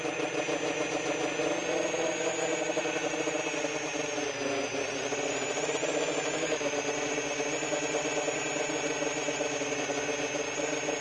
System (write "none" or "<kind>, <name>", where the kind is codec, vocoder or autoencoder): none